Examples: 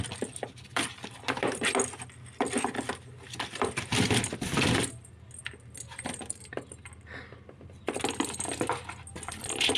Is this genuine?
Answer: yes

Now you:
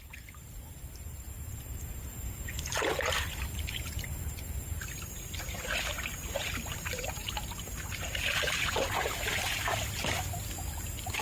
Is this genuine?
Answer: no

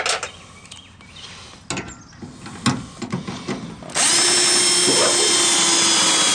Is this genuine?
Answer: yes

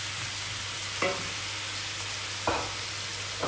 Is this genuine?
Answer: yes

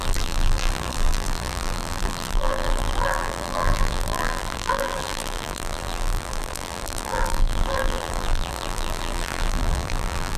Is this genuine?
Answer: no